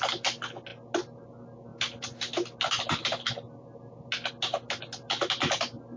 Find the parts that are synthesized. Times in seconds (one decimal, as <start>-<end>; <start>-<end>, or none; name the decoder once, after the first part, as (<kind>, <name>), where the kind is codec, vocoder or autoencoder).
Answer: none